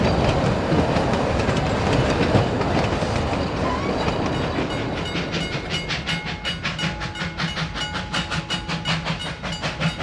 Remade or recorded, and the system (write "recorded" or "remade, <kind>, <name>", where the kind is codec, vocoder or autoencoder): recorded